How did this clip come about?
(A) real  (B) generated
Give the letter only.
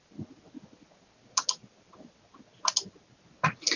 A